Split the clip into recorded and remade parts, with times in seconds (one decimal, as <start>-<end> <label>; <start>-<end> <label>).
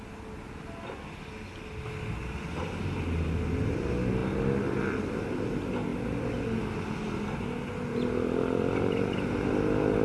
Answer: 0.0-10.0 recorded